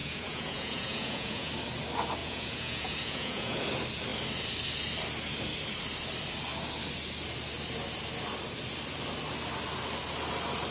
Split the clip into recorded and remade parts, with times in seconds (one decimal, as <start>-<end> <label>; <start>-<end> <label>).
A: 0.0-1.5 remade; 1.5-2.2 recorded; 2.2-3.6 remade; 3.6-10.7 recorded